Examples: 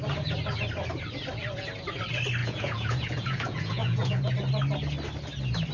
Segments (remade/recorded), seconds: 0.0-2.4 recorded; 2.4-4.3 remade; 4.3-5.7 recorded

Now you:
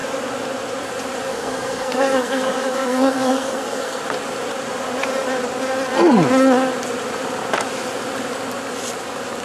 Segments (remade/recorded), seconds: 0.0-1.3 recorded; 1.3-4.0 remade; 4.0-9.4 recorded

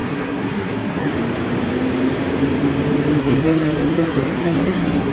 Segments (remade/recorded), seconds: 0.0-1.1 remade; 1.1-3.2 recorded; 3.2-5.1 remade

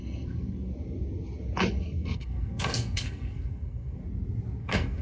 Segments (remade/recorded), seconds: 0.0-0.7 remade; 0.7-1.7 recorded; 1.7-4.0 remade; 4.0-4.6 recorded; 4.6-5.0 remade

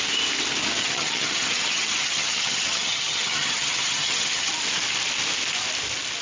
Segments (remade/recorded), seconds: 0.0-0.8 recorded; 0.8-4.5 remade; 4.5-6.2 recorded

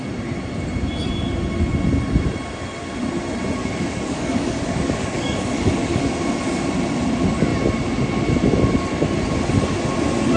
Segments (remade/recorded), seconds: 0.0-3.6 recorded; 3.6-6.0 remade; 6.0-10.4 recorded

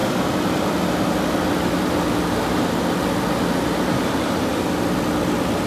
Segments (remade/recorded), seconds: 0.0-5.7 recorded